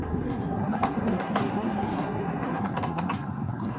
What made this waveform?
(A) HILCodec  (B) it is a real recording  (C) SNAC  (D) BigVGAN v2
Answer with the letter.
C